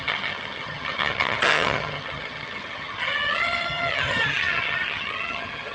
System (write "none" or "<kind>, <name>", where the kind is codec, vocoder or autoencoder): vocoder, HiFi-GAN